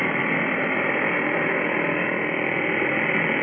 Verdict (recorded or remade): recorded